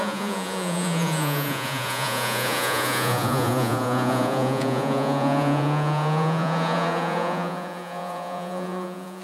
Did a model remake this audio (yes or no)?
yes